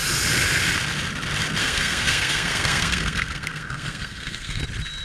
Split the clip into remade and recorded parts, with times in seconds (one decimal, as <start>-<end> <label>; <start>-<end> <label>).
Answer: 0.0-1.6 recorded; 1.6-4.6 remade; 4.6-5.0 recorded